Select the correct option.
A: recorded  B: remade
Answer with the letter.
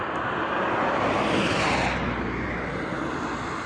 A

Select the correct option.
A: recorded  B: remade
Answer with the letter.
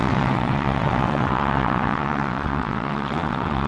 B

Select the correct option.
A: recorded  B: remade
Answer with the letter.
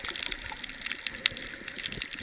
A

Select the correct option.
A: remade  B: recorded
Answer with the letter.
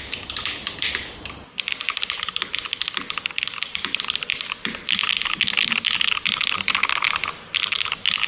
B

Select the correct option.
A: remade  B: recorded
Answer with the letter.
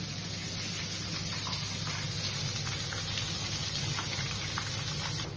B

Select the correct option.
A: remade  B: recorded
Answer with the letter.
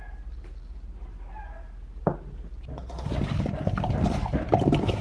B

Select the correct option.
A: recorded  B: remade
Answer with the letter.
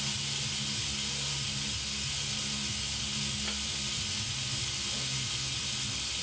A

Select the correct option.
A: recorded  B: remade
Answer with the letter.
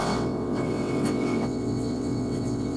B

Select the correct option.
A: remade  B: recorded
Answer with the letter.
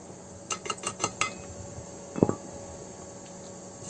B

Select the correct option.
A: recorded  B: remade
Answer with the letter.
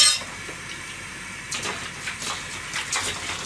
A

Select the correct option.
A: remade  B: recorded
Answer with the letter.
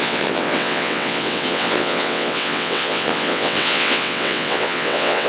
A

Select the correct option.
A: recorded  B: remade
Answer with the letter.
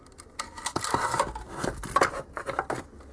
A